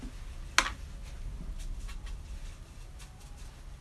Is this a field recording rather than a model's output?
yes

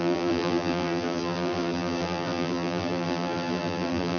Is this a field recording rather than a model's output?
no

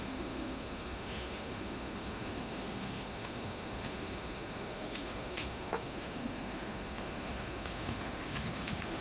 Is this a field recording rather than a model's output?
no